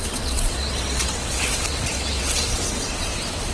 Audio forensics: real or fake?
fake